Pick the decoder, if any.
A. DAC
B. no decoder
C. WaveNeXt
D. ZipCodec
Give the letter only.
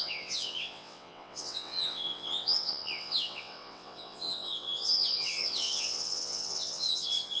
C